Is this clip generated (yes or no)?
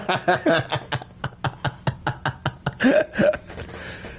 no